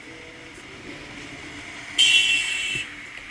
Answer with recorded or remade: recorded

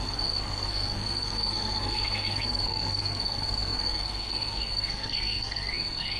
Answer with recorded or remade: remade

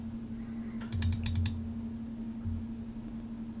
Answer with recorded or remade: recorded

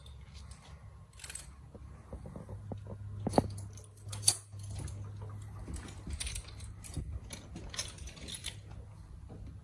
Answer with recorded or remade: recorded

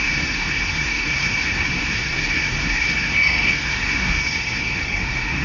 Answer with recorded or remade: remade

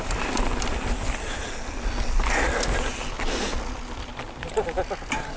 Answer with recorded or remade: recorded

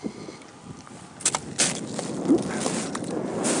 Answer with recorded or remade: recorded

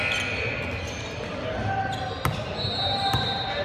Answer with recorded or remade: recorded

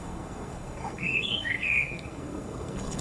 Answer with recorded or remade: remade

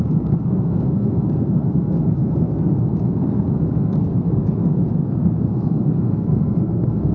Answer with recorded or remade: remade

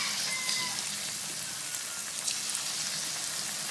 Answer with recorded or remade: recorded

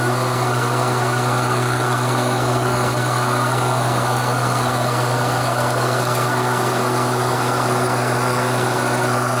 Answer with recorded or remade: remade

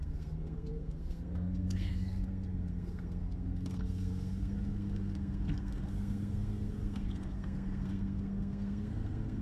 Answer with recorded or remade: remade